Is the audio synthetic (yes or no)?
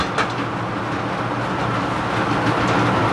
no